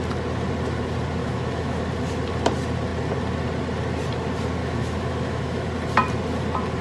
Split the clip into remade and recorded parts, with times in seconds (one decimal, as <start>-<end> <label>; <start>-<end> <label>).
0.0-1.2 recorded; 1.2-1.8 remade; 1.8-4.6 recorded; 4.6-5.7 remade; 5.7-6.8 recorded